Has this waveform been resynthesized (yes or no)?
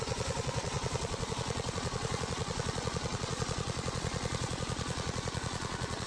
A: yes